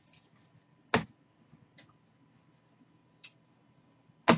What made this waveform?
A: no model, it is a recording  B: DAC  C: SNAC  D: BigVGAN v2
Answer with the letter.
A